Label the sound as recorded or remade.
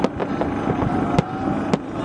recorded